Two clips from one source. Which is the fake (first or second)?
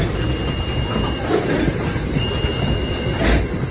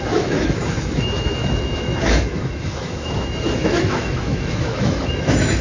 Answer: second